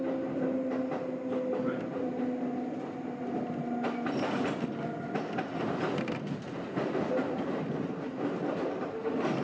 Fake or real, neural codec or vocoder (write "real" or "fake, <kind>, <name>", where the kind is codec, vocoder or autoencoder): real